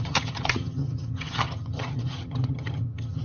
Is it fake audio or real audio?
fake